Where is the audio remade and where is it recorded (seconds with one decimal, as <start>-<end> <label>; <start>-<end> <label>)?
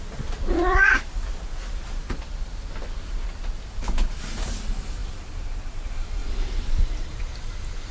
0.0-7.9 recorded